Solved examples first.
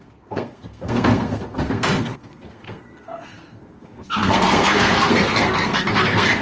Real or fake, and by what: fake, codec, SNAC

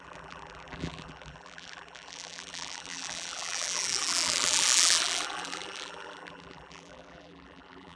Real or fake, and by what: fake, vocoder, BigVGAN v2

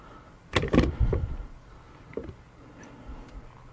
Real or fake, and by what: real